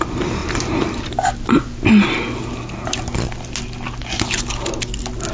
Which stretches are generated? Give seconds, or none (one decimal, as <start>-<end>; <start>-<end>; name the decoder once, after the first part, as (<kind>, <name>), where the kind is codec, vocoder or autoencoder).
none